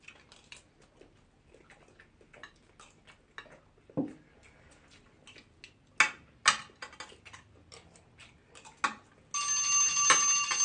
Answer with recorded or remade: recorded